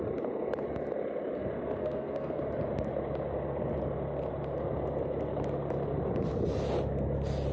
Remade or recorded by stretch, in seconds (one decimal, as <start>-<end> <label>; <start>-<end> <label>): 0.0-1.8 recorded; 1.8-2.4 remade; 2.4-7.5 recorded